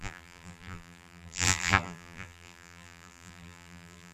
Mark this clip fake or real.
fake